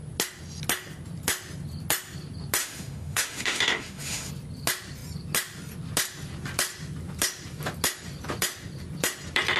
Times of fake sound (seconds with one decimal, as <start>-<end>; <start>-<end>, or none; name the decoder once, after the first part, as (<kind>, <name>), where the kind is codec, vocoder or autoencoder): 2.6-4.3 (autoencoder, DAC-VAE)